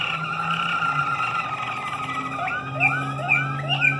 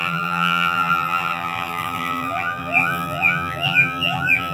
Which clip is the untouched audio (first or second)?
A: first